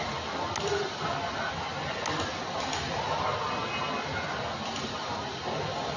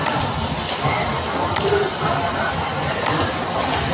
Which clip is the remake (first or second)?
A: second